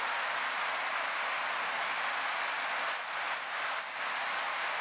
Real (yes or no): yes